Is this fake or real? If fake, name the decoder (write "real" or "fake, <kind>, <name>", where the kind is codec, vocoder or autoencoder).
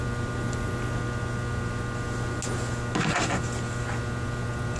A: real